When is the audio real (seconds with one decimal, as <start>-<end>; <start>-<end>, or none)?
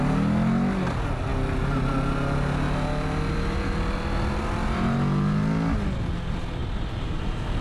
0.0-7.6